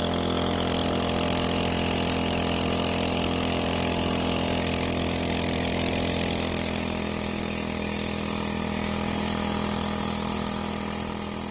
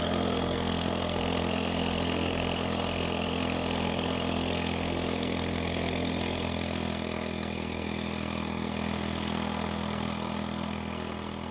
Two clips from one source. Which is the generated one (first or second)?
second